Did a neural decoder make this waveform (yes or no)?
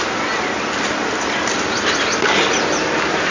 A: no